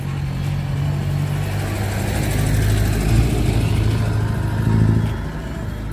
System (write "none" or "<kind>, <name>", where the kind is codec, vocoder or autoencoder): none